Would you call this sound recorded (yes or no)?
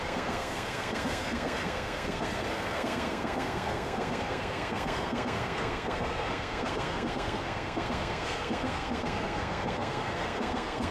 no